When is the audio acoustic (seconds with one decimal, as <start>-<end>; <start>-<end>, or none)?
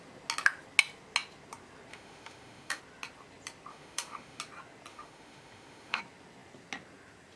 0.0-1.9; 2.8-3.7; 4.4-4.9; 6.0-7.4